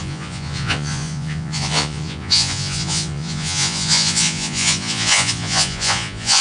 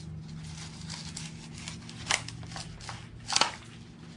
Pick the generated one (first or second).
first